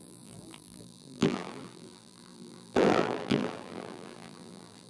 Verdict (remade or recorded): remade